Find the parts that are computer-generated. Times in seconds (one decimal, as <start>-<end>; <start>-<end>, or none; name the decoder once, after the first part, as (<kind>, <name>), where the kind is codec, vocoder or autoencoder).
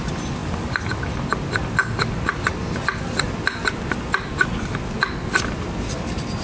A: none